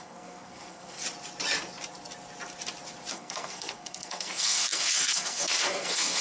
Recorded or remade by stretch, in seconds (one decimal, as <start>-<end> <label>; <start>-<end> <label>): 0.0-1.0 remade; 1.0-3.1 recorded; 3.1-6.2 remade